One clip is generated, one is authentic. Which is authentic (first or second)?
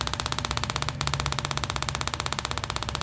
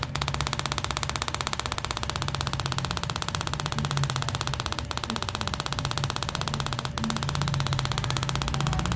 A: second